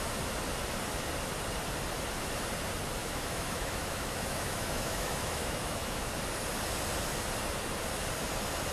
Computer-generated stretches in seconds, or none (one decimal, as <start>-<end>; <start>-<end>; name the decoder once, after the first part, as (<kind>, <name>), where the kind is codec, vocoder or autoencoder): 3.0-6.1 (autoencoder, DAC-VAE)